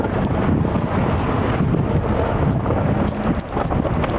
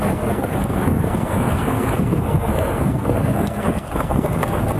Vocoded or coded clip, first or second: second